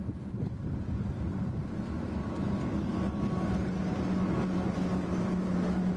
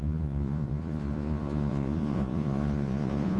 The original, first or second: first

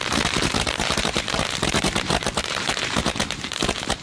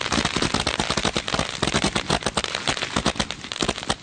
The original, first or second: second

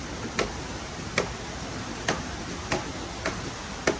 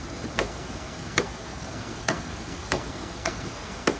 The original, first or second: first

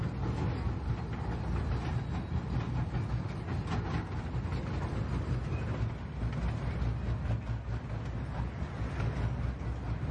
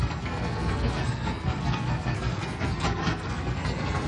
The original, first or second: first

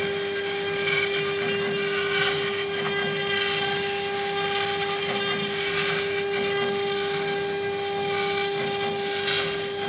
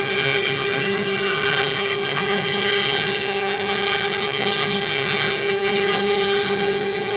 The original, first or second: first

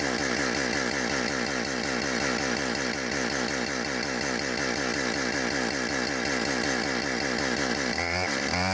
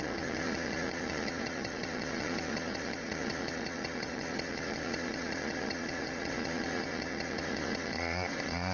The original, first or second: first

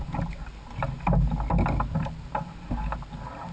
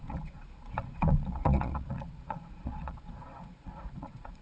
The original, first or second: first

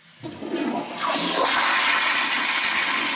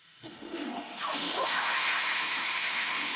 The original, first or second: first